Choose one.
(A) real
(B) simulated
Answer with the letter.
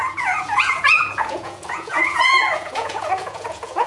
B